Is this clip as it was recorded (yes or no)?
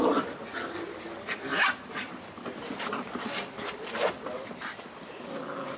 yes